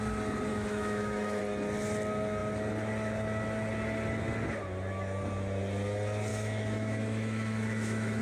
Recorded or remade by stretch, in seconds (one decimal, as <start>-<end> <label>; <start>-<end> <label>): 0.0-0.5 recorded; 0.5-1.4 remade; 1.4-6.3 recorded; 6.3-8.2 remade